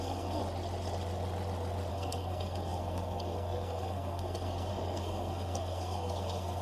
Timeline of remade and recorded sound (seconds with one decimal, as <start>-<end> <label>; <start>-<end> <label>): 0.0-0.4 remade; 0.4-1.9 recorded; 1.9-6.6 remade